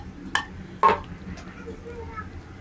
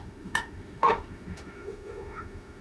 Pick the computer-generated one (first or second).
second